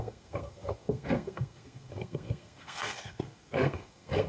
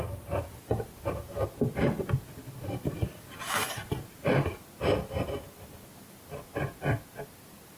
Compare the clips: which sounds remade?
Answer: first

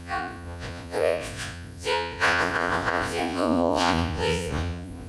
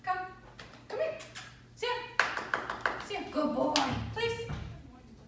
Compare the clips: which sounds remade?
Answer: first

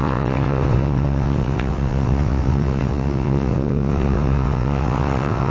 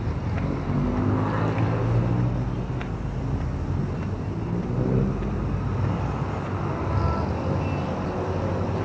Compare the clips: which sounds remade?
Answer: first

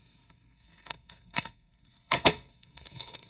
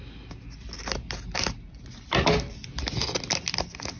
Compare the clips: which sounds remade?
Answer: first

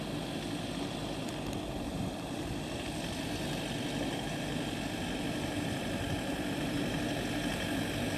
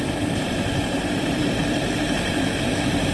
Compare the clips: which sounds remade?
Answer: second